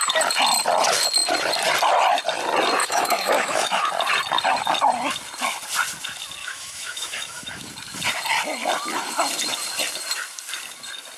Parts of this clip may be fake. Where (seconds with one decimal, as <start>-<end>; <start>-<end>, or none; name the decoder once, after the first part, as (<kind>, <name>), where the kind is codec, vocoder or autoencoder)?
2.8-3.9 (autoencoder, DAC-VAE); 6.4-7.7